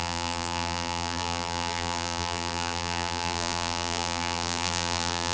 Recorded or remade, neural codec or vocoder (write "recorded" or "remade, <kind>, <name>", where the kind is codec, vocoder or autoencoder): remade, vocoder, BigVGAN v2